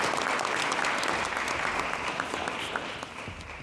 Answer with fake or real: real